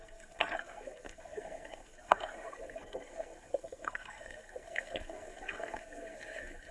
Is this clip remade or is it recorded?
remade